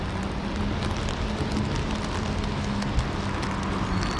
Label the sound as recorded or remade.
recorded